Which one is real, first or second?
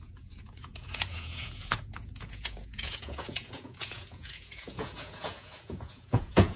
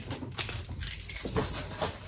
second